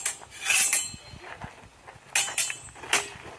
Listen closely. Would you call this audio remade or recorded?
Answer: recorded